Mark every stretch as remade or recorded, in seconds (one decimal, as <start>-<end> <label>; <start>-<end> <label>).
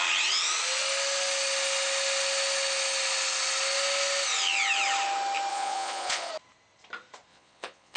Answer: 0.0-5.5 recorded; 5.5-6.3 remade; 6.3-7.3 recorded; 7.3-8.0 remade